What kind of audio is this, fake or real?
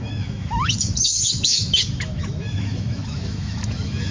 fake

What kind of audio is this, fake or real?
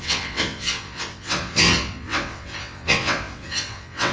fake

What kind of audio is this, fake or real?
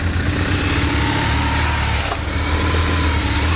real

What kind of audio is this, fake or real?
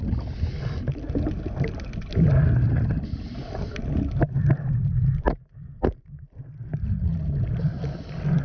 real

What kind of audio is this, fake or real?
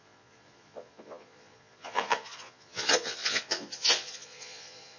fake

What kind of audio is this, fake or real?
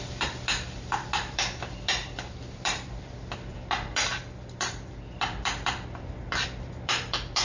fake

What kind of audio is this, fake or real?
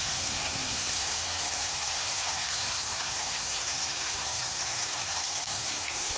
fake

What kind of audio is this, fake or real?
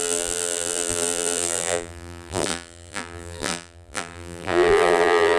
fake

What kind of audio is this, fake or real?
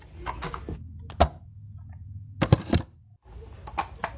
real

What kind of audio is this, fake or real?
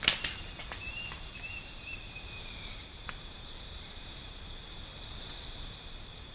fake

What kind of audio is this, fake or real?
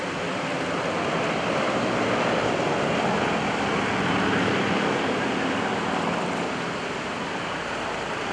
fake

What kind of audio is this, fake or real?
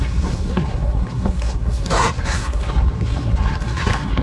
fake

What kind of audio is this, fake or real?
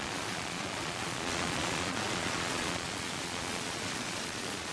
fake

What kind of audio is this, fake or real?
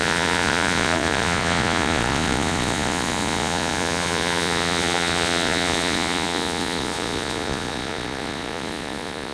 fake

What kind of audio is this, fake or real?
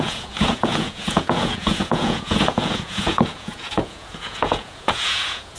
fake